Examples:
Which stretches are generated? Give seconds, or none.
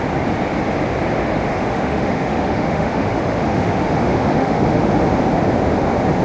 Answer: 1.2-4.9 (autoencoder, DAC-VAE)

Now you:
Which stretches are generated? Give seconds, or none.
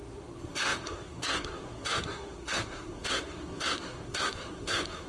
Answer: 0.0-5.1 (codec, SNAC)